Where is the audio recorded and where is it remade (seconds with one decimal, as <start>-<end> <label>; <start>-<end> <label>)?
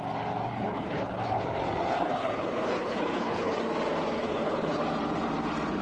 0.0-0.5 recorded; 0.5-1.4 remade; 1.4-1.9 recorded; 1.9-3.6 remade; 3.6-4.2 recorded; 4.2-4.8 remade; 4.8-5.8 recorded